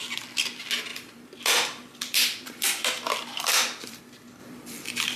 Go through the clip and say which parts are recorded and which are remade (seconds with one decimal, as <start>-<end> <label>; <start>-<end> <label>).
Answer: 0.0-0.9 recorded; 0.9-4.0 remade; 4.0-4.4 recorded; 4.4-5.2 remade